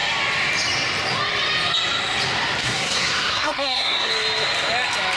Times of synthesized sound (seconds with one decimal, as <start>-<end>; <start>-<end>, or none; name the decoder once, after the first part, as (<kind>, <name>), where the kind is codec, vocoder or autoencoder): 2.6-4.1 (codec, SNAC)